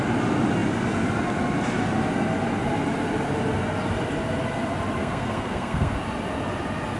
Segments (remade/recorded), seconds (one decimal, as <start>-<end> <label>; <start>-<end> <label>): 0.0-5.0 recorded; 5.0-6.0 remade; 6.0-7.0 recorded